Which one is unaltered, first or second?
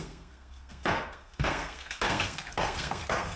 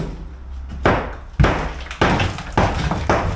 second